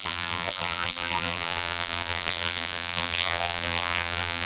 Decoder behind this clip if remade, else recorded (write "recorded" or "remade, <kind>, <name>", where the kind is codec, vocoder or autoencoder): remade, vocoder, BigVGAN v2